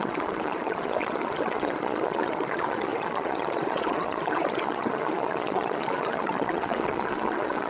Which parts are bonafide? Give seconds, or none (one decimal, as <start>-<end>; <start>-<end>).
none